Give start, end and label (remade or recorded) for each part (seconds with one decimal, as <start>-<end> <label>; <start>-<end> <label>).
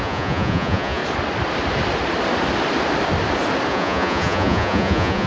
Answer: 0.0-1.0 remade; 1.0-3.7 recorded; 3.7-5.3 remade